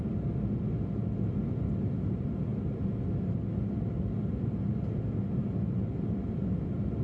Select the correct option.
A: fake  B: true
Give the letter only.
B